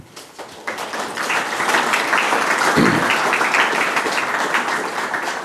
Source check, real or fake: real